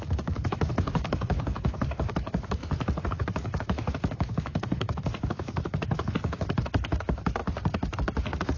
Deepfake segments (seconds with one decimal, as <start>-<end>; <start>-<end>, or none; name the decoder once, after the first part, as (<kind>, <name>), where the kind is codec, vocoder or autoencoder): 0.0-2.6 (autoencoder, DAC-VAE); 3.1-7.4